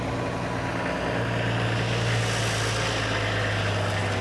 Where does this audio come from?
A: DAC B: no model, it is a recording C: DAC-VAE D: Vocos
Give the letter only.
B